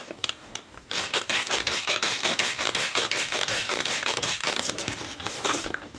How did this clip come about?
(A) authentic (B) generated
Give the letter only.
B